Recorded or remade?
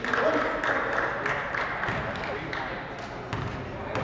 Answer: recorded